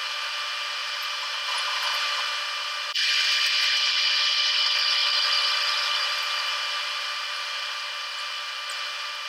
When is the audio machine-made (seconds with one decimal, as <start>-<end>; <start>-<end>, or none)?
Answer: 0.8-2.1